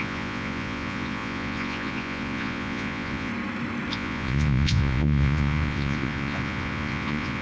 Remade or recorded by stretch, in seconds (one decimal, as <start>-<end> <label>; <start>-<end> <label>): 0.0-3.3 remade; 3.3-3.9 recorded; 3.9-7.4 remade